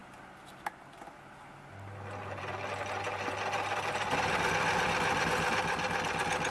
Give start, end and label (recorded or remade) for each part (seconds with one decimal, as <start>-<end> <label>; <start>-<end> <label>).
0.0-6.5 recorded